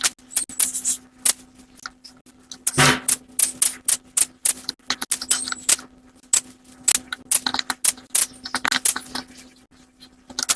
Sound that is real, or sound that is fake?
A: real